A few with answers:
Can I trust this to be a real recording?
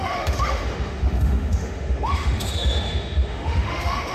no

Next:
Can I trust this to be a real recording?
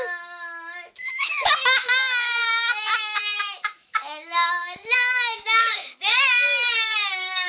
no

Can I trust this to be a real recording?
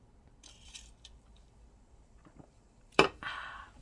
no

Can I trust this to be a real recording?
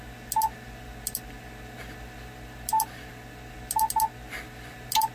yes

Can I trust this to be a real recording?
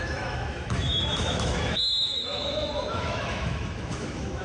no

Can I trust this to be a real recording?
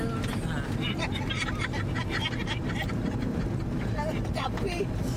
yes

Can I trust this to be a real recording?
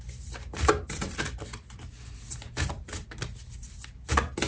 yes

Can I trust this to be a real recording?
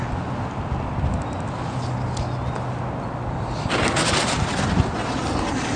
yes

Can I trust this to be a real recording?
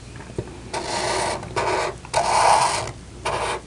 yes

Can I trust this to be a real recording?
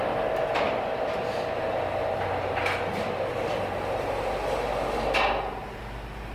yes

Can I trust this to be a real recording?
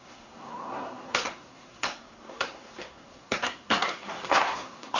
no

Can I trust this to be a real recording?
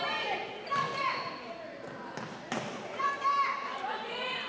yes